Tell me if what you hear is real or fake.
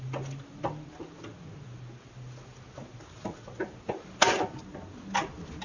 real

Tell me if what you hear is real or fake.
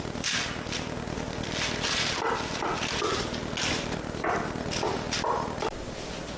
real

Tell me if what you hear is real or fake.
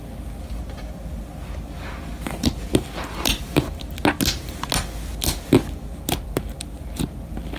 real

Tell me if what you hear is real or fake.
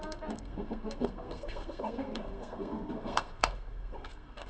fake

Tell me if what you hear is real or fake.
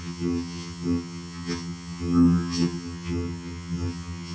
fake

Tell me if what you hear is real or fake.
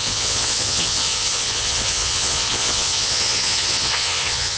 fake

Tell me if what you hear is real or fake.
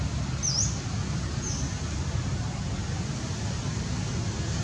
real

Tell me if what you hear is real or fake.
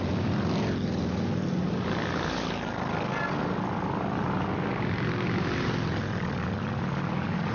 real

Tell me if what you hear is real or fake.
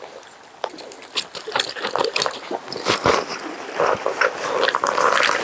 real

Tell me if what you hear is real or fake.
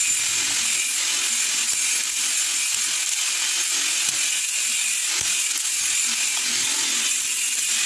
real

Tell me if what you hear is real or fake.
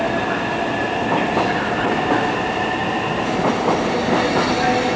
real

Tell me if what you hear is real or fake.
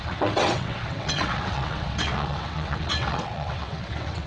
fake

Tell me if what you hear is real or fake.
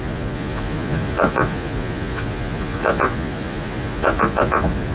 fake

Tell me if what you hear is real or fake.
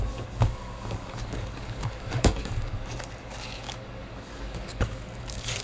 fake